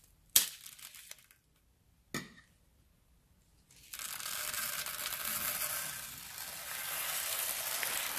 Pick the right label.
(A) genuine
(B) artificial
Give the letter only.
A